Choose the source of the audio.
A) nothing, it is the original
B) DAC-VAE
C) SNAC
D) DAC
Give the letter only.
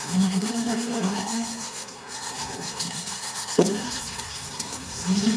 C